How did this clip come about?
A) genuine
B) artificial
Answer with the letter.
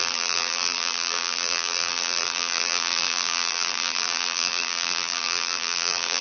B